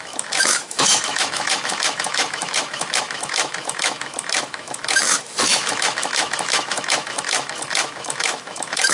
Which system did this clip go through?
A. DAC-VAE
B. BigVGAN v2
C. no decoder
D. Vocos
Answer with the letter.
A